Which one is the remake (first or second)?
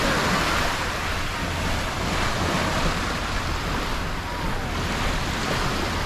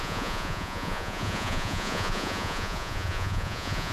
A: second